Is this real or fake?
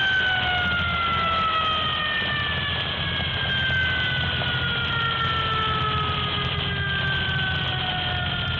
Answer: real